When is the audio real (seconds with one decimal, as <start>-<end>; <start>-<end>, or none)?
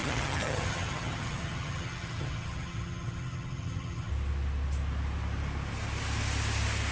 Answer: 4.1-6.9